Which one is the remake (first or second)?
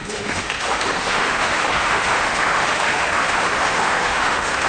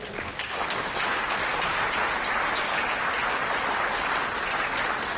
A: first